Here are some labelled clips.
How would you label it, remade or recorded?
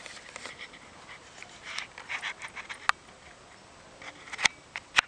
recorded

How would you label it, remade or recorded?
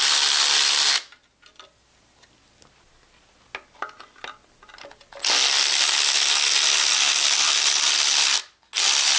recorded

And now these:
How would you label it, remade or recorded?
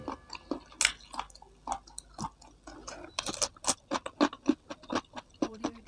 recorded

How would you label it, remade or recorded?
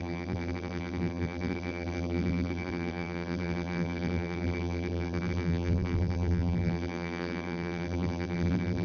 remade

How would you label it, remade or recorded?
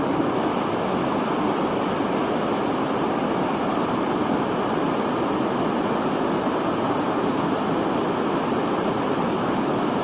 recorded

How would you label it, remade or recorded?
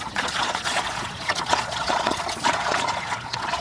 remade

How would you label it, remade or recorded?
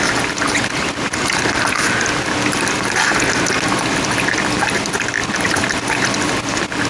recorded